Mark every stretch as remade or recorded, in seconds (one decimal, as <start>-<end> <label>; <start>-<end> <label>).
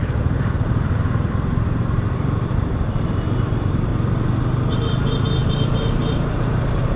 0.0-3.9 remade; 3.9-4.7 recorded; 4.7-7.0 remade